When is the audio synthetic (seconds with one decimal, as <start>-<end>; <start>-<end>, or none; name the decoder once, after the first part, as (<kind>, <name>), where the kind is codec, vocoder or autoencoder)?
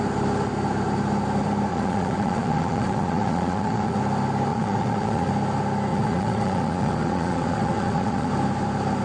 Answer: 1.7-4.0 (vocoder, Vocos); 4.5-5.3; 5.9-8.3